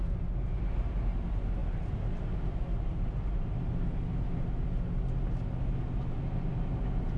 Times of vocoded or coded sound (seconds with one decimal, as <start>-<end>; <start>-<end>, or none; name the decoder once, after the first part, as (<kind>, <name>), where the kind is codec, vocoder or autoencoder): none